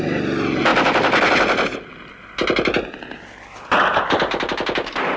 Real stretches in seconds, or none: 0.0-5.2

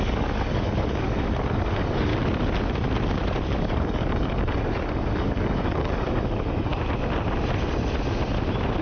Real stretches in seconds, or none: 2.1-3.6; 6.7-8.8